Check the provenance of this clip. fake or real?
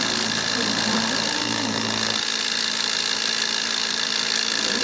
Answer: real